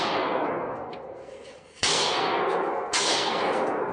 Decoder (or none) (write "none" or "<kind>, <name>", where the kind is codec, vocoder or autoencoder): codec, SNAC